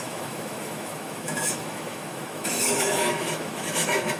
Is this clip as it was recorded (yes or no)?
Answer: no